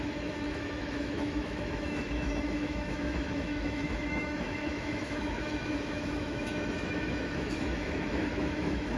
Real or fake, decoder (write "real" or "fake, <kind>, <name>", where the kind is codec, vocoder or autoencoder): fake, autoencoder, DAC-VAE